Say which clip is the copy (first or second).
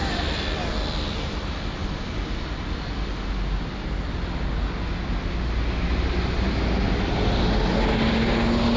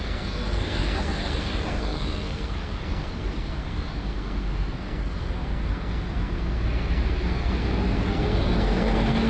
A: second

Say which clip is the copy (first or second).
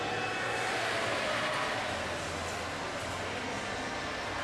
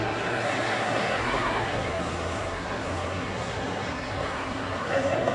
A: second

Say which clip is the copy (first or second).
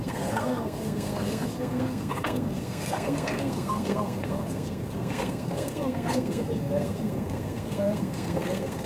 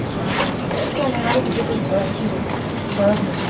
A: first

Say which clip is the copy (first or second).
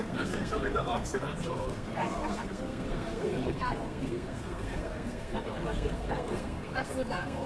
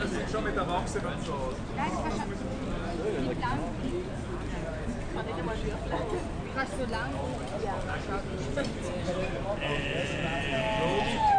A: first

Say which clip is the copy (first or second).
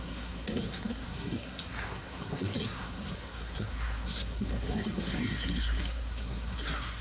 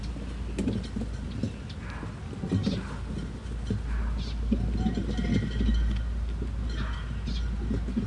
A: first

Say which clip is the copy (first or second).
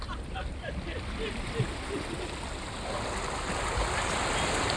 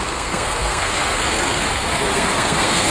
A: second